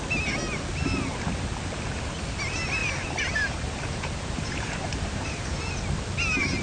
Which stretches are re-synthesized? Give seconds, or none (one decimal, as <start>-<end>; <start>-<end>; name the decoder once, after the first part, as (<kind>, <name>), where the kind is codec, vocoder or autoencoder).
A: 2.8-5.6 (vocoder, BigVGAN v2)